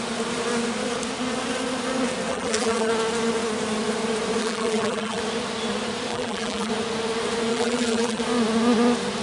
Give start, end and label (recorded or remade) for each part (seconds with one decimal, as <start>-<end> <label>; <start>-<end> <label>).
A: 0.0-2.3 recorded; 2.3-2.9 remade; 2.9-4.4 recorded; 4.4-5.2 remade; 5.2-6.1 recorded; 6.1-6.7 remade; 6.7-7.5 recorded; 7.5-8.2 remade; 8.2-9.2 recorded